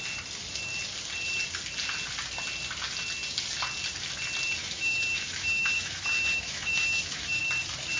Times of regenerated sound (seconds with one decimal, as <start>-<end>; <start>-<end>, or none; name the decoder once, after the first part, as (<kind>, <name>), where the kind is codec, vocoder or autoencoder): 4.6-7.4 (autoencoder, DAC-VAE)

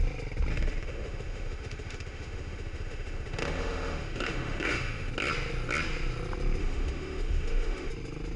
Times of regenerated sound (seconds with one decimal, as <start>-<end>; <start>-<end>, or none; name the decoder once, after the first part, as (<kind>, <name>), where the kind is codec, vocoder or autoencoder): 0.5-5.1 (autoencoder, DAC-VAE); 6.6-7.9

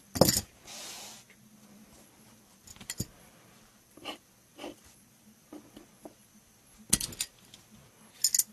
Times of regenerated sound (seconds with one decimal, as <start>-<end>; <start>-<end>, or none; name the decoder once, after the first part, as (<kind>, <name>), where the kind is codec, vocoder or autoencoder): 1.5-6.4 (vocoder, BigVGAN v2)

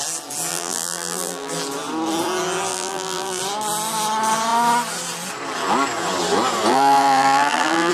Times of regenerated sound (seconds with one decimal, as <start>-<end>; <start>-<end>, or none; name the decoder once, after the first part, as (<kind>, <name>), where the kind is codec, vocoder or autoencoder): 0.5-1.5 (vocoder, BigVGAN v2); 2.7-3.4; 6.7-7.9

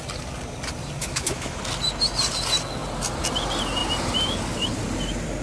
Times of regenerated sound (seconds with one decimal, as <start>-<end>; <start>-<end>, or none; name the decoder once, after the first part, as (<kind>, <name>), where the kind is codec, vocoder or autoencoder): 1.0-1.6 (autoencoder, DAC-VAE)